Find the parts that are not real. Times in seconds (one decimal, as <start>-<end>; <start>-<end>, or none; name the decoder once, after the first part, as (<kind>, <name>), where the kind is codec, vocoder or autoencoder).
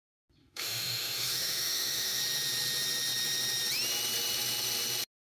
0.4-2.2 (autoencoder, DAC-VAE)